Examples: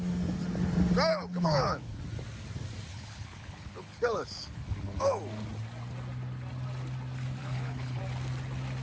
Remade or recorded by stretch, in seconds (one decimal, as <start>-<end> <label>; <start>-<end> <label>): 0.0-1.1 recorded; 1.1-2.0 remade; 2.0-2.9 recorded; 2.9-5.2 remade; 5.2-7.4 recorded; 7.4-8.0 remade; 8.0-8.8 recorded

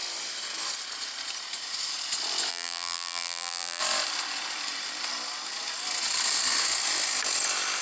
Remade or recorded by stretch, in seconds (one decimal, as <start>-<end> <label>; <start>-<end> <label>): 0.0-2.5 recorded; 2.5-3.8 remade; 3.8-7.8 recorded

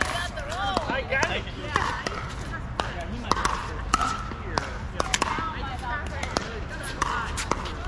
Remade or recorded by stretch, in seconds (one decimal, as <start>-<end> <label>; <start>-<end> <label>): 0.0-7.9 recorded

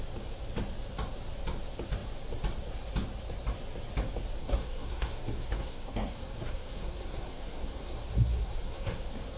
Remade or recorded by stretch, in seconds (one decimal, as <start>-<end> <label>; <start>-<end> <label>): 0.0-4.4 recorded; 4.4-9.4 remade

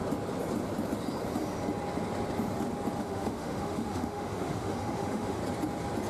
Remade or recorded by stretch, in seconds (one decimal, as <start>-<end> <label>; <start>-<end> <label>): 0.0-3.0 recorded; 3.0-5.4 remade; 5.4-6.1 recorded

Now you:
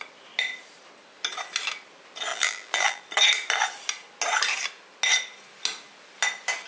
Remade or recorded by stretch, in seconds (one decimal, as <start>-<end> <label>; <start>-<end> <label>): 0.0-2.3 recorded; 2.3-3.0 remade; 3.0-6.7 recorded

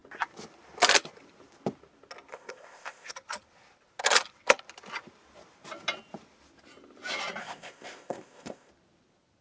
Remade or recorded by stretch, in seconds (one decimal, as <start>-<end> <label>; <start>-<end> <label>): 0.0-2.3 recorded; 2.3-3.1 remade; 3.1-7.4 recorded; 7.4-8.7 remade; 8.7-9.4 recorded